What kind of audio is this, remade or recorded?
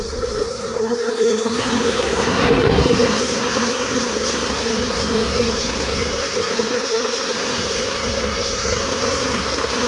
remade